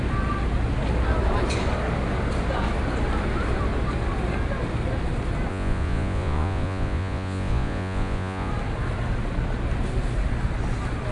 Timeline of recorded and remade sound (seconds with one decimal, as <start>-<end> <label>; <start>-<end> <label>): 0.0-5.5 recorded; 5.5-8.5 remade; 8.5-11.1 recorded